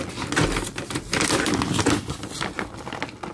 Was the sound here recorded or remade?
recorded